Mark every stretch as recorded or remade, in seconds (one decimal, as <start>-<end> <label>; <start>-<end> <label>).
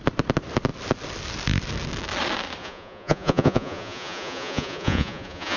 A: 0.0-2.6 recorded; 2.6-5.6 remade